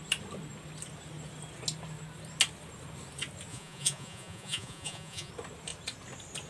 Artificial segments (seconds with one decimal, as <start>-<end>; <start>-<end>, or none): 3.5-5.3